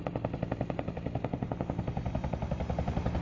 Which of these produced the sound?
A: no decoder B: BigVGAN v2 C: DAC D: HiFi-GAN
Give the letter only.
A